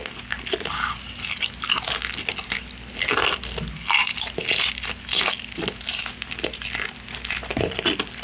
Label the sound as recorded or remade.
recorded